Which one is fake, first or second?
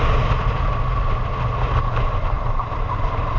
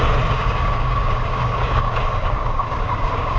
second